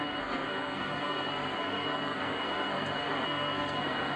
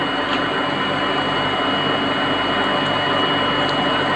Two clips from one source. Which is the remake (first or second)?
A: first